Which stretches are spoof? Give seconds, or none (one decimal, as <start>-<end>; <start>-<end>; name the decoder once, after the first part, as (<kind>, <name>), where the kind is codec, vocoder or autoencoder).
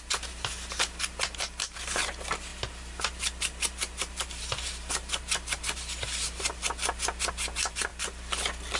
0.0-6.6 (vocoder, BigVGAN v2); 7.3-7.9